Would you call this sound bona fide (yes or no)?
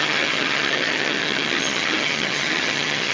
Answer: no